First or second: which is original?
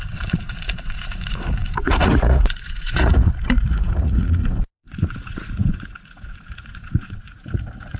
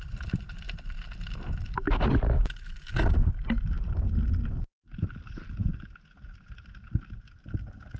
second